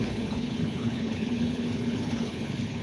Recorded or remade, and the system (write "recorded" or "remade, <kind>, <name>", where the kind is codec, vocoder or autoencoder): remade, codec, HILCodec